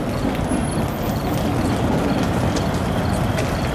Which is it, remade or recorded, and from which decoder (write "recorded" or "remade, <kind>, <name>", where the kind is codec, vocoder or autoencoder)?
recorded